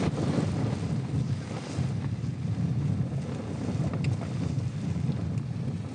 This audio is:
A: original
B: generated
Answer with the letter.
A